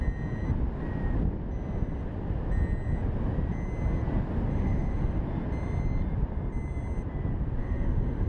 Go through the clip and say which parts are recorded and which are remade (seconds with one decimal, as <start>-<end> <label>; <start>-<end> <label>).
0.0-4.5 recorded; 4.5-5.2 remade; 5.2-7.6 recorded; 7.6-8.3 remade